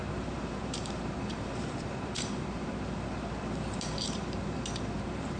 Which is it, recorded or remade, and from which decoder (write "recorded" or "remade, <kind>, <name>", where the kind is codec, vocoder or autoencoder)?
remade, vocoder, BigVGAN v2